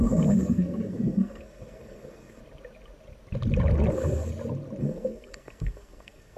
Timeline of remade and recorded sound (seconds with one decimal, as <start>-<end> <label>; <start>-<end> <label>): 0.0-2.4 remade; 2.4-3.9 recorded; 3.9-4.3 remade; 4.3-4.8 recorded; 4.8-6.4 remade